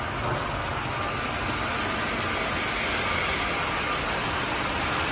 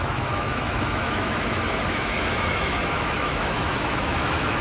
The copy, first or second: second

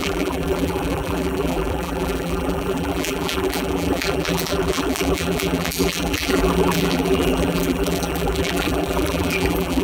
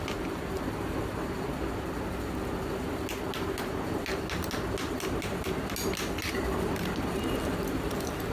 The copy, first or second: first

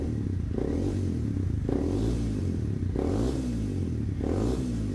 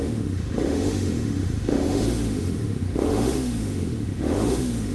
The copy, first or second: second